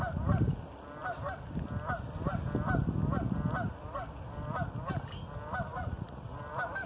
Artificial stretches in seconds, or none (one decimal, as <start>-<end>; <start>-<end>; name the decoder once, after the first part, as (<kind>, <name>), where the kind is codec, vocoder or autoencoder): 5.7-6.4 (vocoder, Vocos)